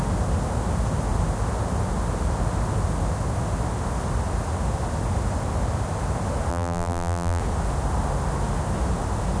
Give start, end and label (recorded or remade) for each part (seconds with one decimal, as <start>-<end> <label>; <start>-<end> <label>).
0.0-6.5 recorded; 6.5-7.4 remade; 7.4-9.4 recorded

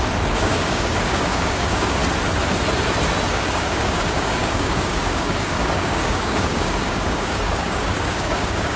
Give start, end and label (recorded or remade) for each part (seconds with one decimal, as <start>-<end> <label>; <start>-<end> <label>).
0.0-2.0 remade; 2.0-3.3 recorded; 3.3-8.8 remade

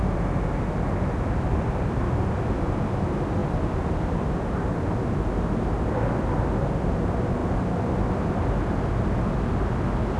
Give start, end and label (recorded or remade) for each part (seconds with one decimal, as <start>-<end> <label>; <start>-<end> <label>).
0.0-10.2 recorded

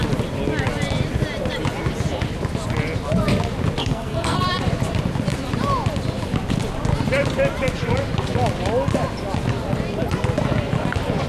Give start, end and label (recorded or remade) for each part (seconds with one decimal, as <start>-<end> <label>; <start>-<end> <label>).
0.0-3.8 recorded; 3.8-4.4 remade; 4.4-11.3 recorded

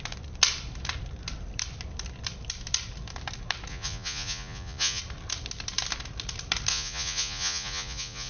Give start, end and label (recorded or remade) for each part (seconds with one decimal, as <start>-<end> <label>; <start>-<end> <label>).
0.0-3.7 recorded; 3.7-5.0 remade; 5.0-6.7 recorded; 6.7-8.3 remade

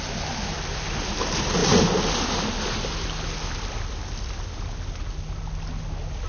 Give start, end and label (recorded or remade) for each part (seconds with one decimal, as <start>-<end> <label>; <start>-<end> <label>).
0.0-6.3 recorded

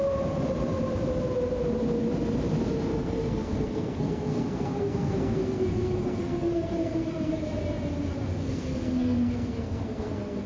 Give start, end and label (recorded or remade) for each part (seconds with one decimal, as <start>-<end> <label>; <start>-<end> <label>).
0.0-2.9 recorded; 2.9-7.4 remade; 7.4-8.4 recorded; 8.4-10.5 remade